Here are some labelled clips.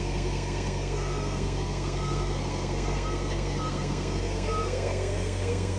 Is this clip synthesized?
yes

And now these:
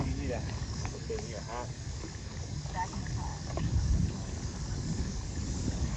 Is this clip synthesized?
yes